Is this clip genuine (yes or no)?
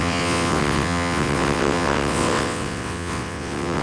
no